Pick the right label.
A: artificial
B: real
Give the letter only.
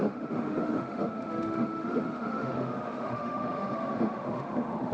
A